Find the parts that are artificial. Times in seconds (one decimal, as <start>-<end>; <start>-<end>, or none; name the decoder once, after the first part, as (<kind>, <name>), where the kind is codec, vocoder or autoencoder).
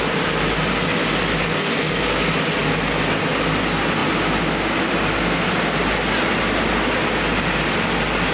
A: 1.4-2.0 (codec, SNAC)